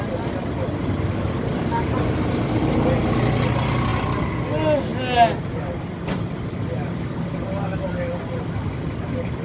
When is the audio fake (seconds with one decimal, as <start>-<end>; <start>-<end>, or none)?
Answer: none